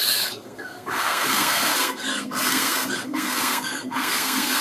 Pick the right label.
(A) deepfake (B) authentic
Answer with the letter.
A